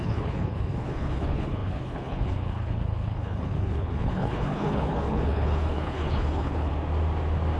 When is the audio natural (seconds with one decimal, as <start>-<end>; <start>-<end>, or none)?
6.7-7.6